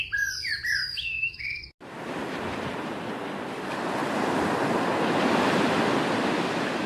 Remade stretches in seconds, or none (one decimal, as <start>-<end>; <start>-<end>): 0.8-1.6